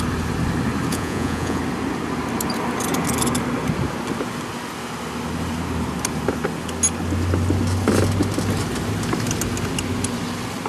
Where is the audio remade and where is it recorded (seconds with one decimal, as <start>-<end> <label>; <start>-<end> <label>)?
0.0-0.9 recorded; 0.9-1.6 remade; 1.6-10.7 recorded